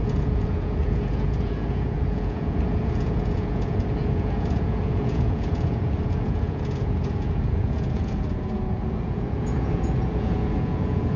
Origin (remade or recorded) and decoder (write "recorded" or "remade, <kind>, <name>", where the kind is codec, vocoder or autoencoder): remade, vocoder, Vocos